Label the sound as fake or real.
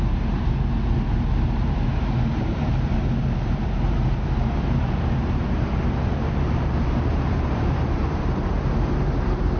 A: fake